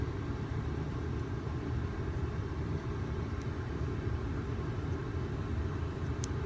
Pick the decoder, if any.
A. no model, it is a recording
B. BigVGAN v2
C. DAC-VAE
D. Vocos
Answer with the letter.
B